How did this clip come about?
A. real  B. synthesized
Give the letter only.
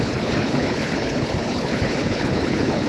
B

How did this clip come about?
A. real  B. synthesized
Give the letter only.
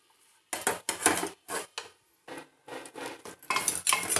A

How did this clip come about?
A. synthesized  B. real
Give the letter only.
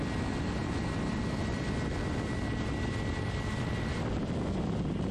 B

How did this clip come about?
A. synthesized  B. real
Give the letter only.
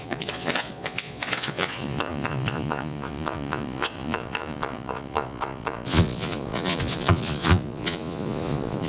A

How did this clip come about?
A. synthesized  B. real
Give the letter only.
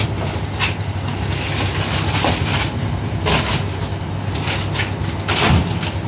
B